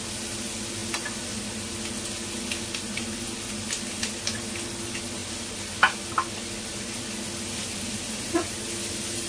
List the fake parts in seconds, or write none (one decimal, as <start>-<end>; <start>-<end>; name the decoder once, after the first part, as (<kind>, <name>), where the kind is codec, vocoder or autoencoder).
none